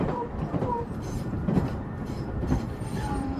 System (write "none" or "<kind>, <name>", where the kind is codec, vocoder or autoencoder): vocoder, BigVGAN v2